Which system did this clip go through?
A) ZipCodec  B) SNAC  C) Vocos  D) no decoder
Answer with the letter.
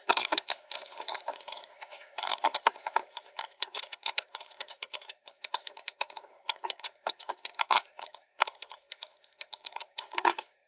B